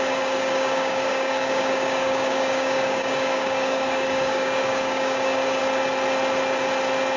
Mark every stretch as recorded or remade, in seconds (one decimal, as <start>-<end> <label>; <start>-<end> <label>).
0.0-5.6 remade; 5.6-7.2 recorded

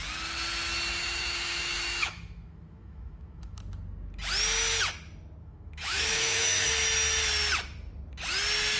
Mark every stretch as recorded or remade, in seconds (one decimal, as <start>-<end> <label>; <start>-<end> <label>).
0.0-1.0 recorded; 1.0-3.6 remade; 3.6-5.4 recorded; 5.4-6.7 remade; 6.7-8.8 recorded

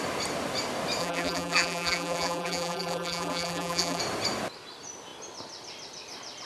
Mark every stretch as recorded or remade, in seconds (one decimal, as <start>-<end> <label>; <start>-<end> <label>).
0.0-1.0 recorded; 1.0-4.0 remade; 4.0-6.5 recorded

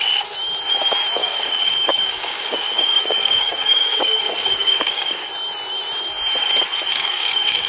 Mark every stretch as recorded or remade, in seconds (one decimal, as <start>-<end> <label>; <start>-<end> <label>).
0.0-1.2 recorded; 1.2-5.3 remade; 5.3-6.9 recorded; 6.9-7.7 remade